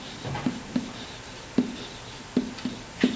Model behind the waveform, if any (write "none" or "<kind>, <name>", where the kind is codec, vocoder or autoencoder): none